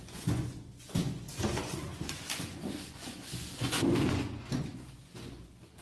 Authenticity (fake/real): fake